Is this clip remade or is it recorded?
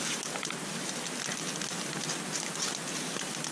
recorded